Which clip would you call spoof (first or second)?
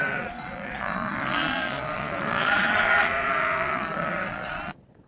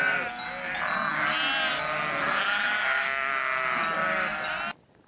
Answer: first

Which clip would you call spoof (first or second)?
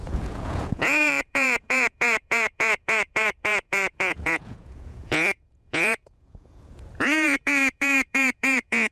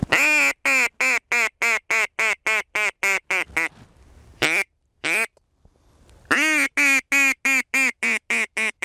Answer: first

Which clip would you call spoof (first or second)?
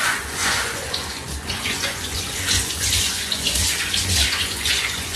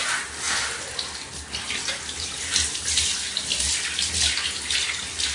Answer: first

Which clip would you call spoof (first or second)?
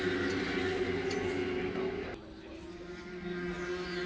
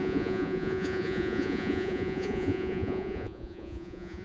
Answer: second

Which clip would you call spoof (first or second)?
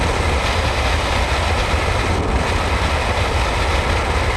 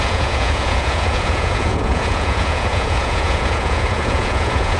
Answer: second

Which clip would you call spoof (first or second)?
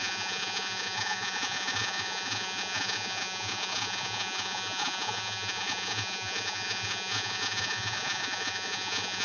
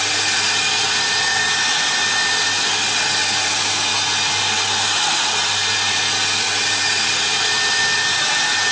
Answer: first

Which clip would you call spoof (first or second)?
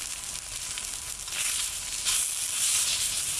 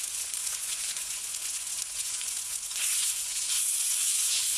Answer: second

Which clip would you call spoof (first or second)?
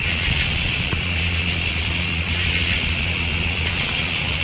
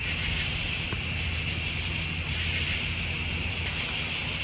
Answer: first